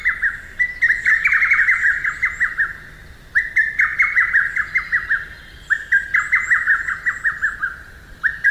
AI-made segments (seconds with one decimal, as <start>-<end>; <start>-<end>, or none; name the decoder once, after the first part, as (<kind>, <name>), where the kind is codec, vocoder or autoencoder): 3.9-4.5 (vocoder, BigVGAN v2); 7.6-8.5